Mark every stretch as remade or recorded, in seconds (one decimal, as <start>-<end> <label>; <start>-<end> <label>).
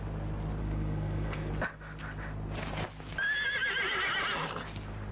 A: 0.0-0.6 recorded; 0.6-1.5 remade; 1.5-5.1 recorded